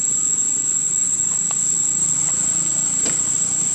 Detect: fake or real real